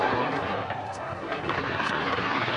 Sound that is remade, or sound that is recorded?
remade